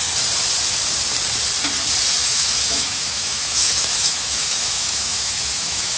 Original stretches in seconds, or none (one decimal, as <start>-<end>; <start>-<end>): 0.0-2.2